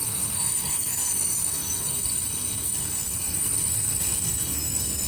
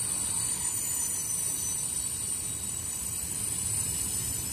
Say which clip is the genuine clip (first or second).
second